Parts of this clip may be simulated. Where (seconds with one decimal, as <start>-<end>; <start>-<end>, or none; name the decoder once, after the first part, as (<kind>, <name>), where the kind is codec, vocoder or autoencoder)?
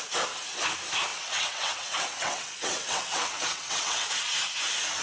1.1-4.1 (vocoder, WaveNeXt)